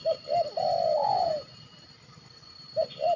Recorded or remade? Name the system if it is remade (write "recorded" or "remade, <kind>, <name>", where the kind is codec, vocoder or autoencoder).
recorded